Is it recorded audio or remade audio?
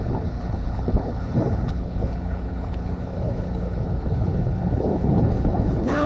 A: remade